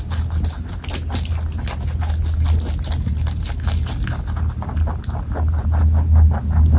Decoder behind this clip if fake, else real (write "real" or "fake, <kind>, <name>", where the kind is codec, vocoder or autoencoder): real